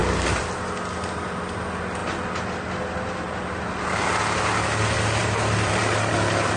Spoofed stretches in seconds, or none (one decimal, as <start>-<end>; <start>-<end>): 5.2-6.1